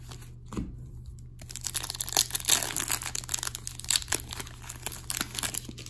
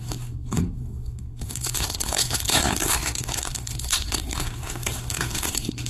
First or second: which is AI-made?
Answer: second